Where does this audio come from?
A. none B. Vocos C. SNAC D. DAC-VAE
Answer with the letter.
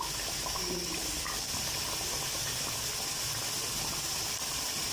A